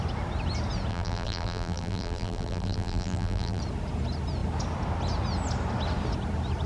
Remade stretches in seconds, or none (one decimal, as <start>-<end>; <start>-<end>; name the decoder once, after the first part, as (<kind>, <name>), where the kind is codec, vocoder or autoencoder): 0.9-3.6 (vocoder, BigVGAN v2)